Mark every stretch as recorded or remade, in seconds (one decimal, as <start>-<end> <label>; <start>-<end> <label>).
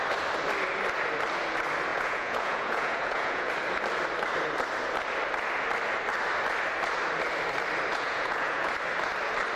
0.0-1.9 recorded; 1.9-3.5 remade; 3.5-7.9 recorded; 7.9-8.7 remade; 8.7-9.6 recorded